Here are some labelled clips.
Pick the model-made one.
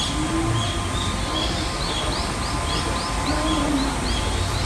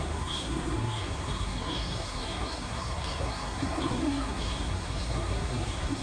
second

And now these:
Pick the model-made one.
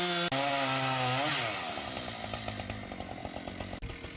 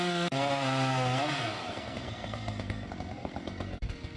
second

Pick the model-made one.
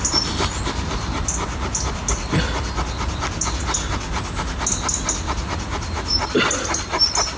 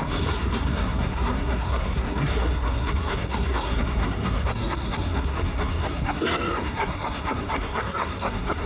second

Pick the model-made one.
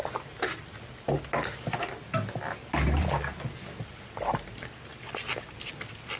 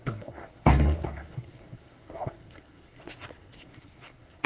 second